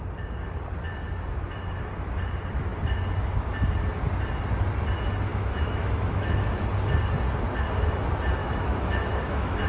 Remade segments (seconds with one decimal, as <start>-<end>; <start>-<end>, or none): 5.3-6.5; 8.4-9.7